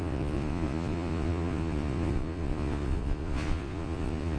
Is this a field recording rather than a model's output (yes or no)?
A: no